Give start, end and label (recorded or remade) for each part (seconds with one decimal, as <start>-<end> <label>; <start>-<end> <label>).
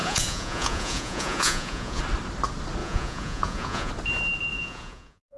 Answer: 0.0-2.0 remade; 2.0-2.8 recorded; 2.8-3.9 remade; 3.9-4.5 recorded; 4.5-5.4 remade